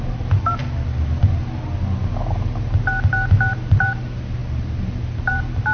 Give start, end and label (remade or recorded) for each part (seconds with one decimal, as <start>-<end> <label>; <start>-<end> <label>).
0.0-0.6 remade; 0.6-3.7 recorded; 3.7-5.7 remade